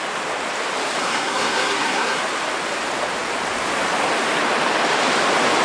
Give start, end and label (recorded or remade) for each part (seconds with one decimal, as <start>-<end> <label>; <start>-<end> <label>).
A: 0.0-1.0 recorded; 1.0-2.2 remade; 2.2-5.6 recorded